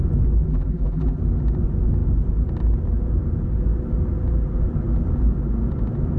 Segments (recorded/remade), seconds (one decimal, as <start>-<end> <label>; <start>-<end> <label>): 0.0-0.5 recorded; 0.5-1.2 remade; 1.2-6.2 recorded